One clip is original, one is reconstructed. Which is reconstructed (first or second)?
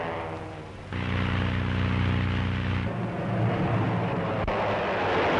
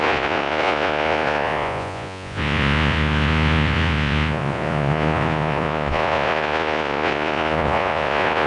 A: second